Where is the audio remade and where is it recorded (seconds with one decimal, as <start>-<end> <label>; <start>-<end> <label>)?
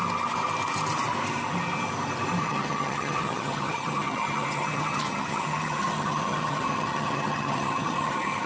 0.0-2.4 recorded; 2.4-8.5 remade